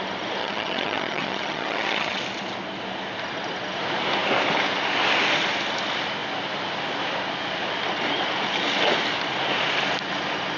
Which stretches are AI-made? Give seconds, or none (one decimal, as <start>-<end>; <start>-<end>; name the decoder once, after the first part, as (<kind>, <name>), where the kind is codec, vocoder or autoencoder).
0.4-2.2 (vocoder, HiFi-GAN)

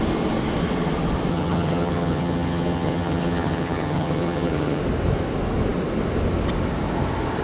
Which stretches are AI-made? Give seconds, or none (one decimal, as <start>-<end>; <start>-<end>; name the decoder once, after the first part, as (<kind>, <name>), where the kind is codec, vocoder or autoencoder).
1.3-4.8 (vocoder, HiFi-GAN)

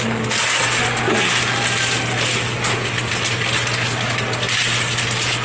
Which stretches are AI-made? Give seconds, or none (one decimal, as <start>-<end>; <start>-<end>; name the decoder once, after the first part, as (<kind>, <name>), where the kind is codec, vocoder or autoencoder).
none

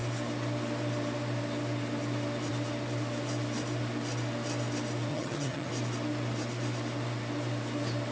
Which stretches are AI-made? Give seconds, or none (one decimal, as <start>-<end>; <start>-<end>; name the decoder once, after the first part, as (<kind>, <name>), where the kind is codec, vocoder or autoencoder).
5.1-5.7 (vocoder, HiFi-GAN)

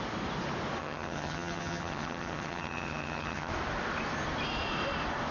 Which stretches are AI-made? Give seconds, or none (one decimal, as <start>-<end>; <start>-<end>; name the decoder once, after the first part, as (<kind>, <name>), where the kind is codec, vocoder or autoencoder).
0.8-3.5 (vocoder, HiFi-GAN)